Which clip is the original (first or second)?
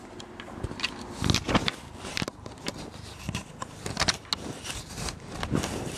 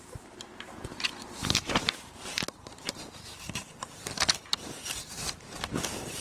first